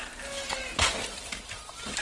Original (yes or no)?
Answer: yes